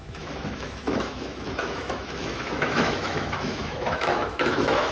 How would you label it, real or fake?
fake